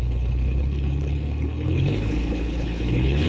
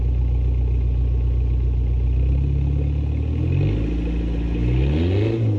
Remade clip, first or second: first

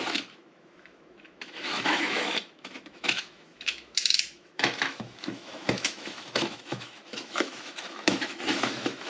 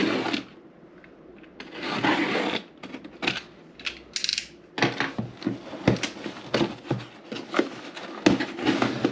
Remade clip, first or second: first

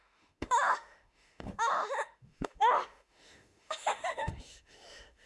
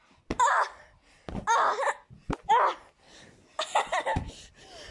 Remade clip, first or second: first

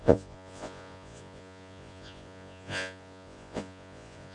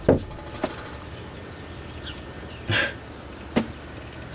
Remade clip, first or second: first